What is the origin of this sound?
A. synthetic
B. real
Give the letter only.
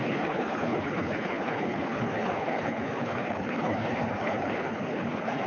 A